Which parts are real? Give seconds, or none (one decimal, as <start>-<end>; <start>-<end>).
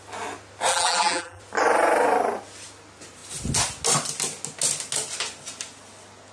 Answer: 0.0-0.7; 1.4-6.3